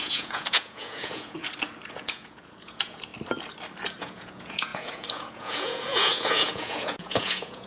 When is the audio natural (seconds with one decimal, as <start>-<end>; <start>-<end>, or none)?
1.4-1.9; 3.1-4.0

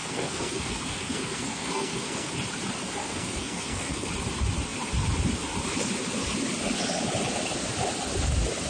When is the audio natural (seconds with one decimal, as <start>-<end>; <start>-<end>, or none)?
2.3-3.0; 4.1-8.7

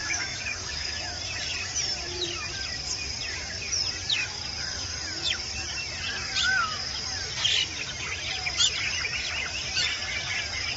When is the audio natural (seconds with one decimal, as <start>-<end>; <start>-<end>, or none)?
1.1-10.8

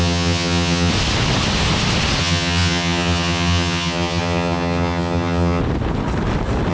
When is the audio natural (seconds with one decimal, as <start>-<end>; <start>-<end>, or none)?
0.9-2.2; 5.6-6.7

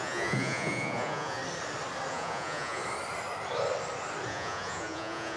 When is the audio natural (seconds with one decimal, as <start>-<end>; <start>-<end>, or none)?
1.4-2.1; 2.8-4.3

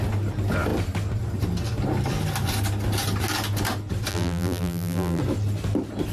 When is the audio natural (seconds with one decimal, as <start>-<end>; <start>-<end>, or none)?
0.0-4.1; 5.2-6.1